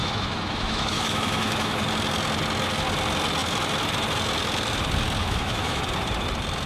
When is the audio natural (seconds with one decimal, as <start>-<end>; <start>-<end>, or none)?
1.8-5.2; 5.8-6.7